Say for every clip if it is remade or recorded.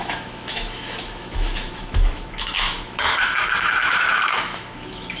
remade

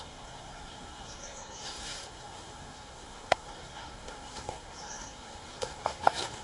remade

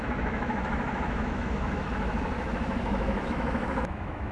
remade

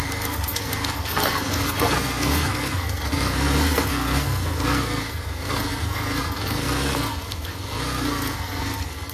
remade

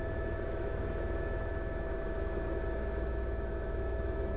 remade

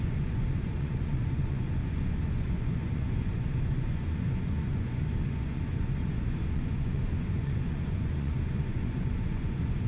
remade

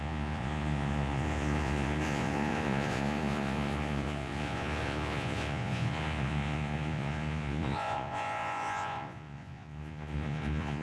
remade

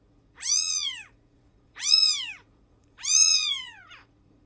remade